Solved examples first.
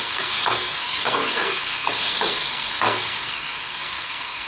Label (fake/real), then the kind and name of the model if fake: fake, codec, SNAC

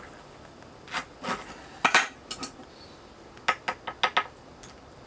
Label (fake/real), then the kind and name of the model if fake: real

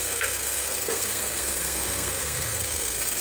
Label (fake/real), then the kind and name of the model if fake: fake, codec, SNAC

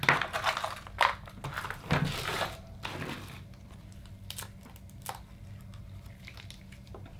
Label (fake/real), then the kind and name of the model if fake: real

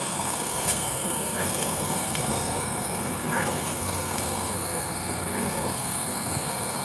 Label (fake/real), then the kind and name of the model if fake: fake, codec, SNAC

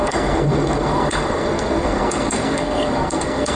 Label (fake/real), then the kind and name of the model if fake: fake, codec, SNAC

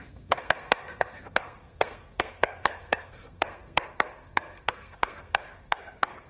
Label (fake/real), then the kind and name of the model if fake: fake, codec, SNAC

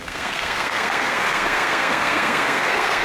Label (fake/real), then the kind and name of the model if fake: fake, codec, SNAC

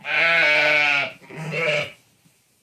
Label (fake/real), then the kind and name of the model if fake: real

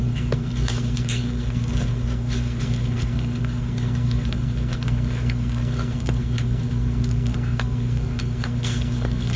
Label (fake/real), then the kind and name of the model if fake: fake, codec, SNAC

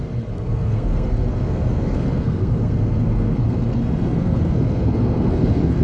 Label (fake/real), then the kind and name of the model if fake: fake, codec, SNAC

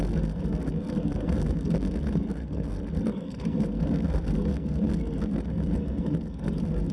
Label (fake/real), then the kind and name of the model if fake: fake, codec, SNAC